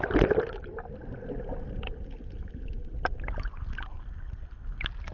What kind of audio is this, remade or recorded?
recorded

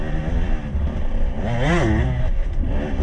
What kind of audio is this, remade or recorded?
recorded